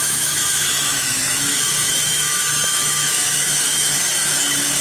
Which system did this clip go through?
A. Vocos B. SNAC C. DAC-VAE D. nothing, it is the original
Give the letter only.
C